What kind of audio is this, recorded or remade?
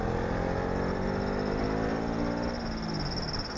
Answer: recorded